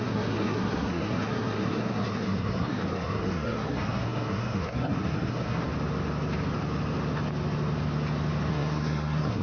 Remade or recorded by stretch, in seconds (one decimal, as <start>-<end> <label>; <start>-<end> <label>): 0.0-5.7 remade; 5.7-8.5 recorded; 8.5-9.4 remade

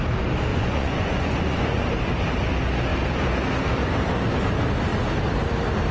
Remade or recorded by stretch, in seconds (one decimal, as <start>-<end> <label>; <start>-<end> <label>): 0.0-0.5 recorded; 0.5-1.8 remade; 1.8-5.9 recorded

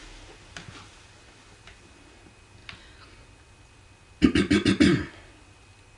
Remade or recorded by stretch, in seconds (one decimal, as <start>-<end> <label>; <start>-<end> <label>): 0.0-6.0 recorded

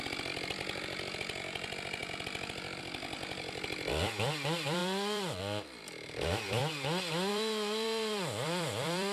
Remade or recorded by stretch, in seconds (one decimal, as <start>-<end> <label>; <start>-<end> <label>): 0.0-6.6 remade; 6.6-7.3 recorded; 7.3-9.1 remade

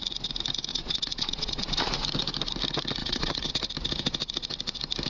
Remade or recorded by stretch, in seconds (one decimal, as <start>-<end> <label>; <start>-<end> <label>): 0.0-0.7 recorded; 0.7-1.9 remade; 1.9-3.0 recorded; 3.0-3.5 remade; 3.5-5.1 recorded

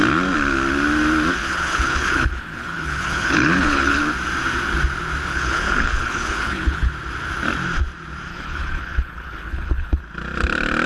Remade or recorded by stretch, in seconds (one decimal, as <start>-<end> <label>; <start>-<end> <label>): 0.0-1.3 recorded; 1.3-4.0 remade; 4.0-5.2 recorded; 5.2-6.9 remade; 6.9-8.3 recorded; 8.3-10.0 remade; 10.0-10.9 recorded